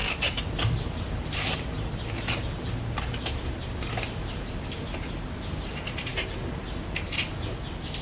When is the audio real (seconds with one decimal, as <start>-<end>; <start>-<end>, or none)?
4.5-8.0